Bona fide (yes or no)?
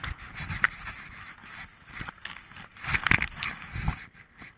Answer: yes